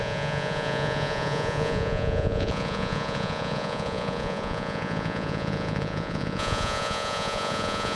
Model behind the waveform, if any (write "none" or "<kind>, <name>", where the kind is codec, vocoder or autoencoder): vocoder, Vocos